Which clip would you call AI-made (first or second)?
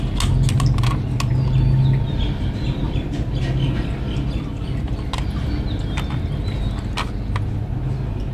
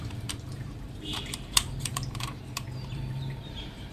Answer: second